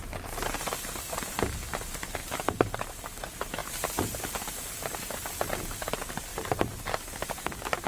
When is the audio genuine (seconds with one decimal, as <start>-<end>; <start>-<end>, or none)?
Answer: 0.0-2.2; 2.8-3.6; 4.7-6.3; 6.8-7.9